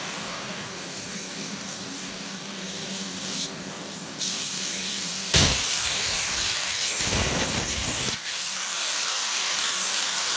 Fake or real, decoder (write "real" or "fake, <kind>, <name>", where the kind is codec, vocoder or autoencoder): fake, codec, DAC